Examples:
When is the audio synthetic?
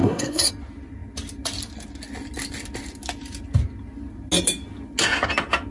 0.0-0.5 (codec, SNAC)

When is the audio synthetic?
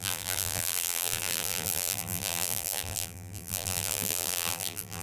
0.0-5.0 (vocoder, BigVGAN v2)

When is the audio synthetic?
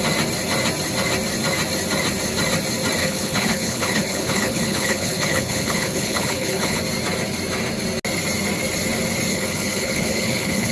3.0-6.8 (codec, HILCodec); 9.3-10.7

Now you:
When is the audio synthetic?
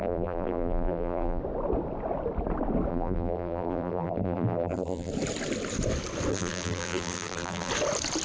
0.0-1.4 (vocoder, BigVGAN v2); 2.9-5.1; 6.3-7.7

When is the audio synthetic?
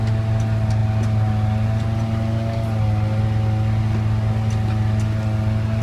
none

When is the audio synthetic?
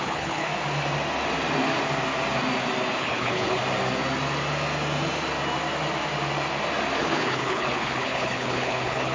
0.0-0.5 (codec, HILCodec); 3.0-3.6; 7.0-9.1